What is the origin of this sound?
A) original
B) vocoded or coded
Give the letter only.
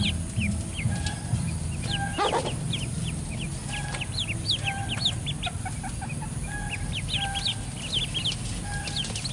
A